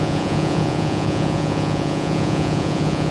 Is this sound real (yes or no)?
no